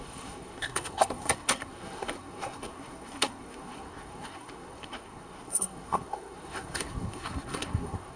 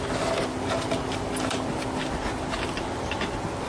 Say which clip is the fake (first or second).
first